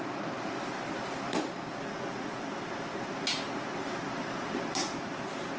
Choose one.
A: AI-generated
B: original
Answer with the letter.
B